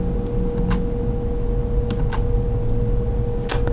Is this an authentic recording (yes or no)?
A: yes